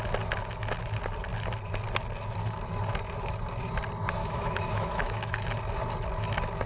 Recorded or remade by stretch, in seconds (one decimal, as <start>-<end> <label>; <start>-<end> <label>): 0.0-4.2 recorded; 4.2-5.4 remade; 5.4-6.7 recorded